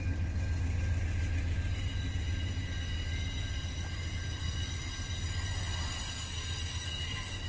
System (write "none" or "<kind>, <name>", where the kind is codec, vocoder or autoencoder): none